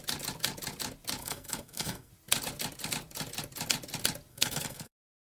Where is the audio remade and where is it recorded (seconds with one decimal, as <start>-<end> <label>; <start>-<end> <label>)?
0.0-1.2 recorded; 1.2-2.1 remade; 2.1-4.3 recorded; 4.3-5.3 remade